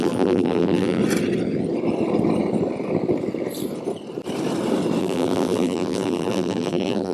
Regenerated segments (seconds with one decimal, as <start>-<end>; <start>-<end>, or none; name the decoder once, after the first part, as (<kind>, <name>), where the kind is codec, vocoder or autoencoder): 0.0-1.0 (vocoder, BigVGAN v2); 5.0-7.1